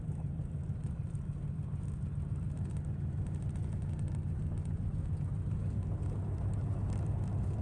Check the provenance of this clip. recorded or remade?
recorded